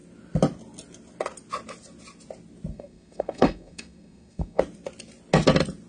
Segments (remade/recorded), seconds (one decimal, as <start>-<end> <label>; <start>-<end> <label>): 0.0-2.7 recorded; 2.7-4.6 remade; 4.6-5.9 recorded

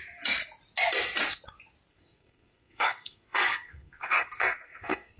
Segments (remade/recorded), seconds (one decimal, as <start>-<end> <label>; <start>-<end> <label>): 0.0-1.9 recorded; 1.9-5.2 remade

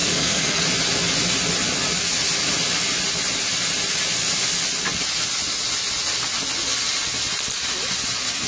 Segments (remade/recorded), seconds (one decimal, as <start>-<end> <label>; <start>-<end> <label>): 0.0-0.6 remade; 0.6-8.5 recorded

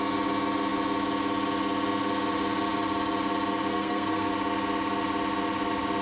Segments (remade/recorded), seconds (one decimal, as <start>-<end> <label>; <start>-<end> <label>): 0.0-3.7 recorded; 3.7-4.3 remade; 4.3-6.0 recorded

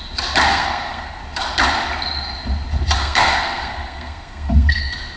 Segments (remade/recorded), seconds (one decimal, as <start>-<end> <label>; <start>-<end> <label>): 0.0-0.5 recorded; 0.5-1.2 remade; 1.2-3.0 recorded; 3.0-4.8 remade; 4.8-5.2 recorded

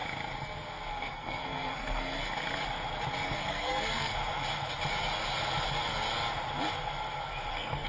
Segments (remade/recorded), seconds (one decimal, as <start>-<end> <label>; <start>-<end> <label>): 0.0-0.9 recorded; 0.9-2.2 remade; 2.2-3.3 recorded; 3.3-4.1 remade; 4.1-7.5 recorded; 7.5-7.9 remade

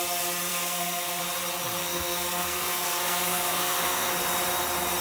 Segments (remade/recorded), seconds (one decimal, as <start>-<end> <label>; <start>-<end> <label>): 0.0-0.5 recorded; 0.5-1.2 remade; 1.2-1.8 recorded; 1.8-4.1 remade; 4.1-5.0 recorded